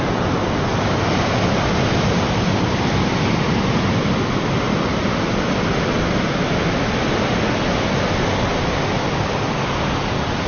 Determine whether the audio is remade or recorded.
recorded